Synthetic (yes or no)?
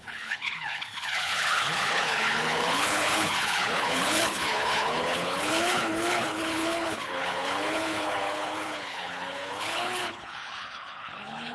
yes